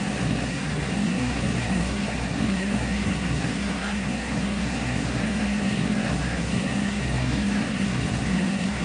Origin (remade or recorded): remade